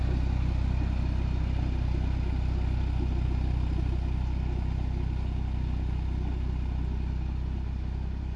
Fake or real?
real